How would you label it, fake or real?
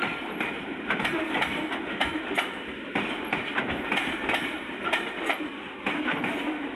real